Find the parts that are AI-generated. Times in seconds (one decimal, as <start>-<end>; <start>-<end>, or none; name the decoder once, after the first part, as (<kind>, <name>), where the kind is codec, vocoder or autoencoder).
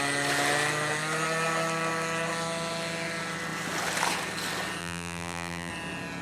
4.8-5.7 (vocoder, BigVGAN v2)